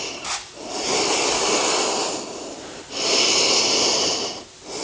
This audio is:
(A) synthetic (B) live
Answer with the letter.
B